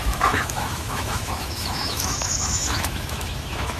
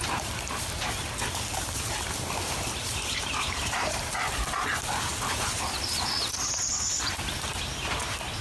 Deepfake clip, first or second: first